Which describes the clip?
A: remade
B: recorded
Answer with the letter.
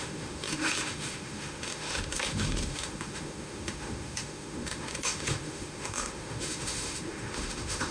A